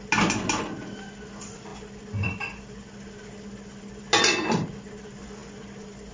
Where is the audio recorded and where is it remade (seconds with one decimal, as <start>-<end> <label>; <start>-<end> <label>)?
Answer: 0.0-5.4 recorded; 5.4-6.1 remade